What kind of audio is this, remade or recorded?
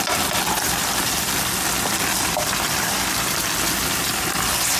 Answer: recorded